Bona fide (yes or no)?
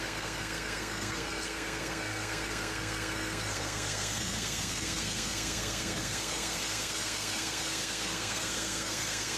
no